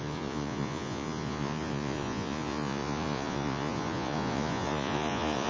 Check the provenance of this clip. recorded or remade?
remade